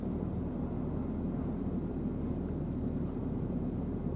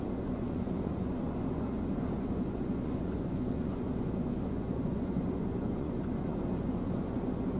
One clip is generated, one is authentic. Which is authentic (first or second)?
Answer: first